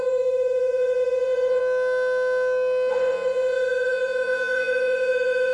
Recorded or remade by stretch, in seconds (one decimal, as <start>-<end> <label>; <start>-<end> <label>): 0.0-1.6 remade; 1.6-2.9 recorded; 2.9-5.5 remade